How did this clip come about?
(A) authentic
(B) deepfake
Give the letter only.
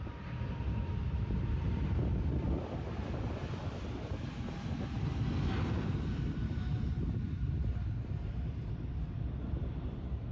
A